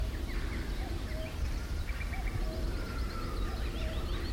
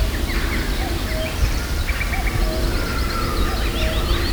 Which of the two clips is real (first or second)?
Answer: second